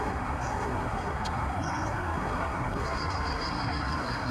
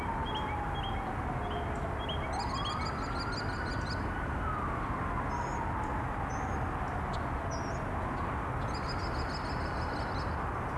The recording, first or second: second